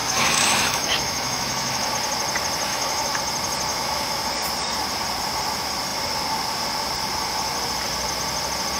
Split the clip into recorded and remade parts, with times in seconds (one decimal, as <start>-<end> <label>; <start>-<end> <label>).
0.0-1.9 remade; 1.9-2.7 recorded; 2.7-3.2 remade; 3.2-3.7 recorded; 3.7-4.3 remade; 4.3-8.8 recorded